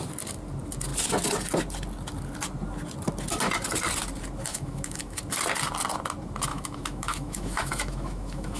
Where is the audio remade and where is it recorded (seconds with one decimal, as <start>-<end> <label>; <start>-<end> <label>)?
0.0-4.5 recorded; 4.5-5.2 remade; 5.2-6.5 recorded; 6.5-8.6 remade